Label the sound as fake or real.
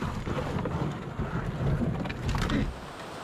real